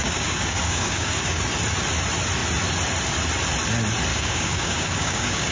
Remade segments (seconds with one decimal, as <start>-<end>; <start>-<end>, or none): 0.0-1.4; 4.1-5.5